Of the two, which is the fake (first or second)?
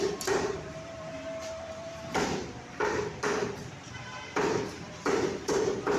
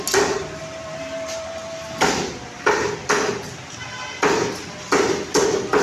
first